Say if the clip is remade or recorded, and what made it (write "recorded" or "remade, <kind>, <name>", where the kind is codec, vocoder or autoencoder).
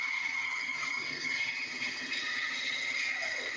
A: remade, vocoder, HiFi-GAN